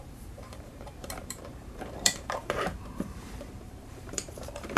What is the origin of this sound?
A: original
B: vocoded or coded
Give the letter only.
B